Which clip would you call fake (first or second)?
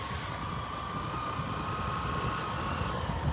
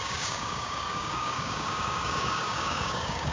second